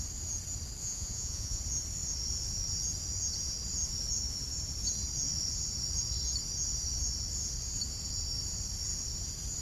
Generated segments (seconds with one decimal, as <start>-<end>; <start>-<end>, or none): 0.8-1.6